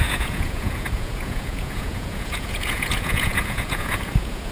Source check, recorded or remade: remade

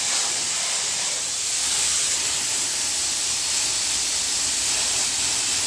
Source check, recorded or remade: recorded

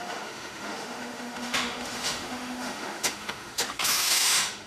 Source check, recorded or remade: remade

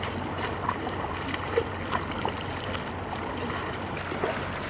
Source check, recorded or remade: recorded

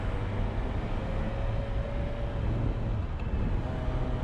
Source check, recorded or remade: recorded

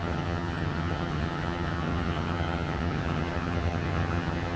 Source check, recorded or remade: remade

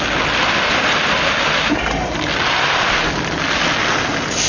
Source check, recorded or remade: recorded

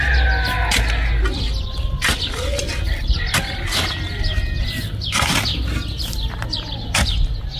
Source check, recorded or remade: recorded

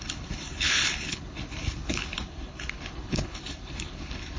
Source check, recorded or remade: remade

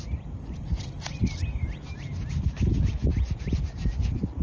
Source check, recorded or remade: recorded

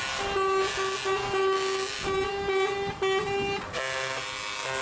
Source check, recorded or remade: recorded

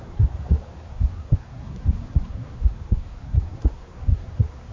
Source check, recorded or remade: remade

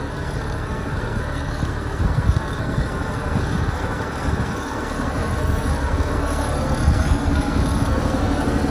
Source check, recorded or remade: remade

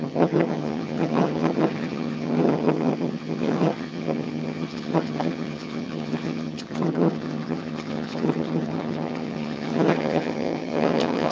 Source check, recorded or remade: remade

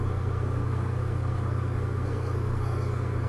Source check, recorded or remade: remade